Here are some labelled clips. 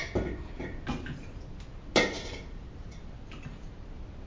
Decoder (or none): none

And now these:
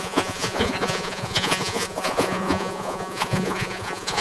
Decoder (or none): vocoder, Vocos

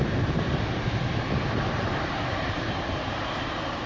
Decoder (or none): vocoder, BigVGAN v2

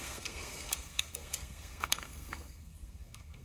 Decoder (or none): codec, SNAC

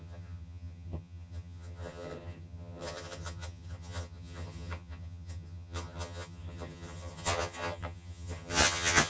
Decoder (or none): vocoder, HiFi-GAN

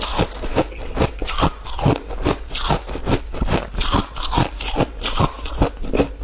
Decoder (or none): none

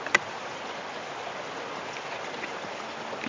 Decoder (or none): none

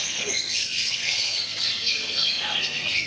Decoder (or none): codec, SNAC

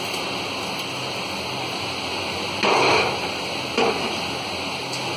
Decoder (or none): none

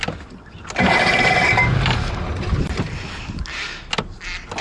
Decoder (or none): none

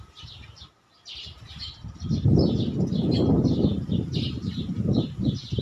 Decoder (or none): none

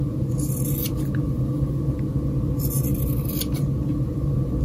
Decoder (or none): none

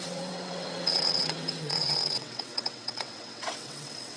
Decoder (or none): vocoder, WaveNeXt